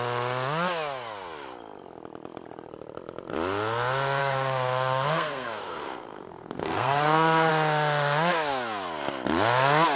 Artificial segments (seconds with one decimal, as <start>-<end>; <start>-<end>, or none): 4.2-7.5